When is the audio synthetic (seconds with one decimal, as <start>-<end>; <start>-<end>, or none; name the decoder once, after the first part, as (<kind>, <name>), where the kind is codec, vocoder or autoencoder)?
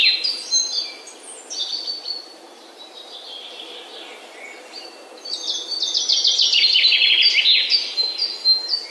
1.7-3.6 (vocoder, BigVGAN v2)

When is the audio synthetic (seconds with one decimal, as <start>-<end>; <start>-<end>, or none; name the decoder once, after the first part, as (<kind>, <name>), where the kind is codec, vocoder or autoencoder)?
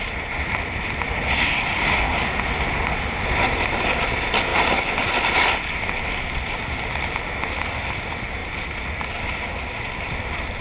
none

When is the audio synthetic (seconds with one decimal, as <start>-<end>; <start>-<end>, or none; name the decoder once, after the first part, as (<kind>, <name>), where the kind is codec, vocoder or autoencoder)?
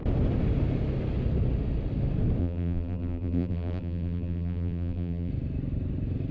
2.4-5.3 (vocoder, BigVGAN v2)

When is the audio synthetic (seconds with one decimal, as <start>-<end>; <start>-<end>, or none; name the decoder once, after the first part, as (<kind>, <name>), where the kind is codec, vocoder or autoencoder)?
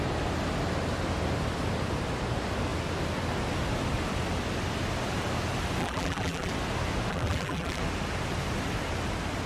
5.8-6.5 (vocoder, BigVGAN v2); 7.1-7.8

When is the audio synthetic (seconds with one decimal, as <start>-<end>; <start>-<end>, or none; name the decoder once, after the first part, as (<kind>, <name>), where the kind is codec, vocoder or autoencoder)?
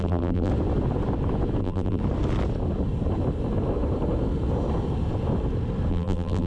0.0-0.5 (vocoder, BigVGAN v2); 1.6-2.0; 5.9-6.5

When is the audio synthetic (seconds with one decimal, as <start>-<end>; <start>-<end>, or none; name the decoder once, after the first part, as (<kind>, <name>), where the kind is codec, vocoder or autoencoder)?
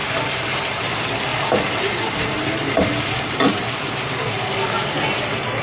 0.0-0.9 (vocoder, BigVGAN v2); 1.3-3.7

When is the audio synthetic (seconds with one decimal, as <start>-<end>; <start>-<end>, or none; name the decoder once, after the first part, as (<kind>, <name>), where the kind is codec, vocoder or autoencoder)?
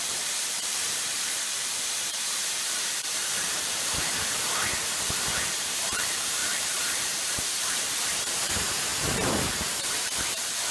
0.0-10.7 (vocoder, BigVGAN v2)